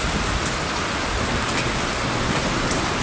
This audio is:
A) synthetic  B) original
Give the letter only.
B